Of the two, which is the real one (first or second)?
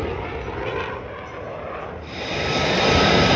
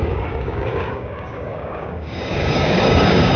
first